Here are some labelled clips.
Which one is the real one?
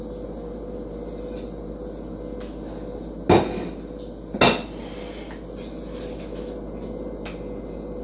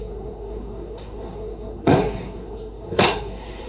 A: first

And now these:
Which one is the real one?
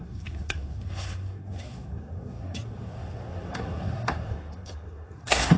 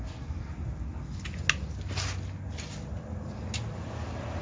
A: second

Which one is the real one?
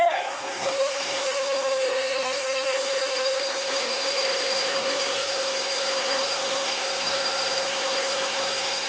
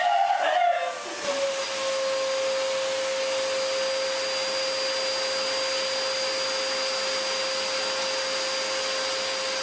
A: second